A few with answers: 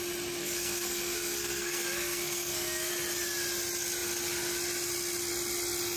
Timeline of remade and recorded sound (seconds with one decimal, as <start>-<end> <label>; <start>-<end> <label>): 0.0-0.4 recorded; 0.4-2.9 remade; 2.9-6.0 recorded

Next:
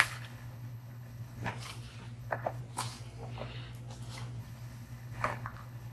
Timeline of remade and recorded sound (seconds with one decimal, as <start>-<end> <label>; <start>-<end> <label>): 0.0-1.5 remade; 1.5-2.2 recorded; 2.2-2.6 remade; 2.6-4.4 recorded; 4.4-5.9 remade

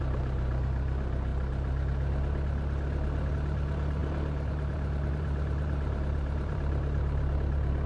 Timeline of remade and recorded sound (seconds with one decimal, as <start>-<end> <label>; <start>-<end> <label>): 0.0-1.3 remade; 1.3-3.3 recorded; 3.3-7.9 remade

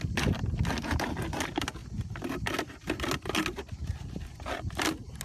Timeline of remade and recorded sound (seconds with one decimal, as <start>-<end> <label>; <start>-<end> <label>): 0.0-5.2 recorded

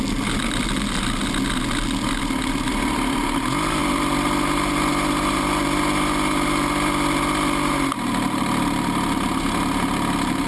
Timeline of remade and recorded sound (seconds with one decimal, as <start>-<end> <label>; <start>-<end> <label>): 0.0-10.5 recorded

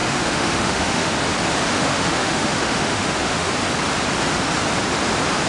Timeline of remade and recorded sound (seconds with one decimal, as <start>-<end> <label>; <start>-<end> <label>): 0.0-1.1 remade; 1.1-1.7 recorded; 1.7-3.5 remade; 3.5-5.5 recorded